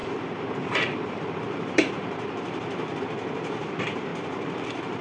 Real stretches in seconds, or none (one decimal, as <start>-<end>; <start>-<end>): 3.0-4.1